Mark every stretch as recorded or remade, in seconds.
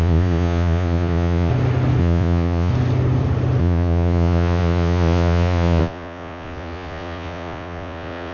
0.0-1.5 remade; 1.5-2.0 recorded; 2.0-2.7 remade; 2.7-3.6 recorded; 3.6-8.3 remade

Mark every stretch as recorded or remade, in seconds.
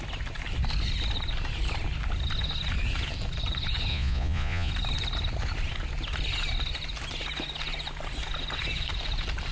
0.0-3.9 recorded; 3.9-4.7 remade; 4.7-9.5 recorded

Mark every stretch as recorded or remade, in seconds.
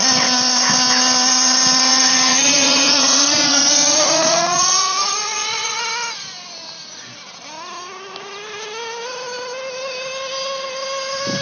0.0-1.9 recorded; 1.9-5.8 remade; 5.8-11.4 recorded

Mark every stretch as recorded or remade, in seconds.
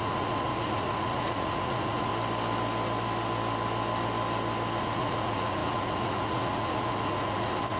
0.0-2.1 remade; 2.1-4.8 recorded; 4.8-7.8 remade